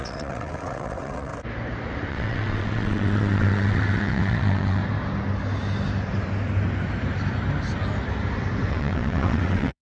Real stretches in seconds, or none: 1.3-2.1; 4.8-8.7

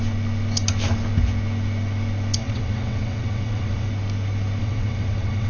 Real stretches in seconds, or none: 0.0-2.4; 3.9-4.6

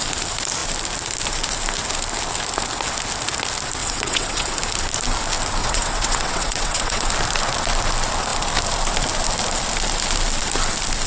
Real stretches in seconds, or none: 0.0-3.8; 4.5-5.6; 7.1-11.1

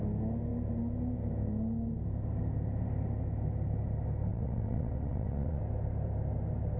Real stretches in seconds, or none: 0.0-4.3; 5.6-6.8

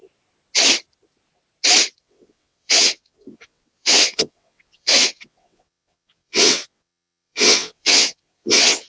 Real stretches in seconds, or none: 0.0-2.0